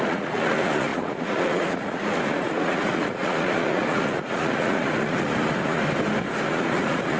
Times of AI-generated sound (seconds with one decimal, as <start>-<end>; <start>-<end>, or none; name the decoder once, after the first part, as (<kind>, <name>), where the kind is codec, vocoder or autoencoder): 0.0-5.8 (vocoder, Vocos); 6.5-7.2